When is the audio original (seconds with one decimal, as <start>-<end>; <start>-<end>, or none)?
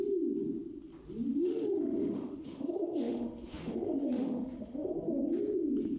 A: 0.0-1.3; 4.9-6.0